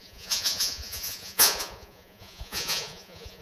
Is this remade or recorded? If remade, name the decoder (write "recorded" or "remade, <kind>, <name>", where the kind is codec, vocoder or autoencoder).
remade, vocoder, Vocos